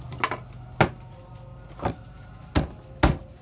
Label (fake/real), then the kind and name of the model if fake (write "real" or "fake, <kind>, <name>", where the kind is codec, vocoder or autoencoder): real